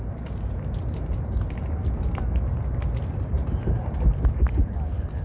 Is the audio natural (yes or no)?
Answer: yes